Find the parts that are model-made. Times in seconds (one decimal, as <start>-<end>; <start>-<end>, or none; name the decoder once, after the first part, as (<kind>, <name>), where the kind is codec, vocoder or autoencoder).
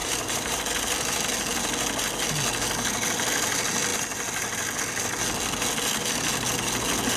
0.0-0.6 (vocoder, BigVGAN v2)